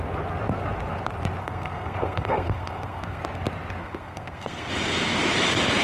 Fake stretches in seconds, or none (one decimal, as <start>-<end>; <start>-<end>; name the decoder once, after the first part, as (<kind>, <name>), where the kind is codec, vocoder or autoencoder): 1.4-3.2 (codec, SNAC); 3.8-4.7